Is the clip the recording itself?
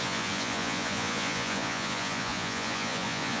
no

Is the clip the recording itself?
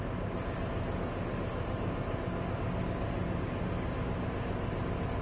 yes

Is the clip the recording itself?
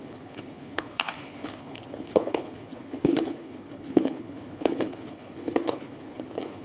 no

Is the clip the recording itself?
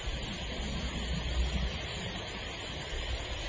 yes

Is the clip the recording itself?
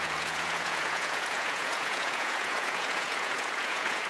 no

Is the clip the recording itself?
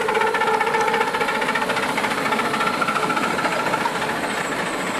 yes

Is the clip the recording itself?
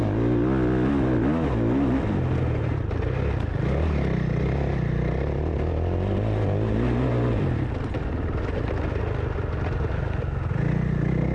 yes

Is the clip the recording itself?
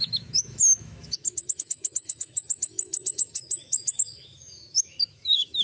no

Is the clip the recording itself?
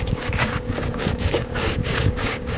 no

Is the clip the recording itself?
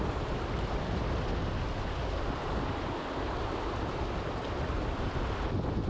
yes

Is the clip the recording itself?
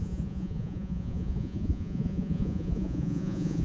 no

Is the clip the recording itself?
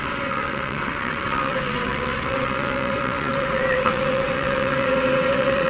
no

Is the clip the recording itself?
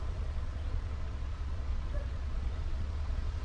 no